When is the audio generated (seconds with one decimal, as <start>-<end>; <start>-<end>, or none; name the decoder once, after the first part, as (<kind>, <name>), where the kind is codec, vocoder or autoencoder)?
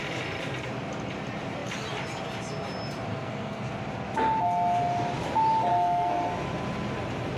3.1-3.7 (codec, SNAC); 5.7-6.3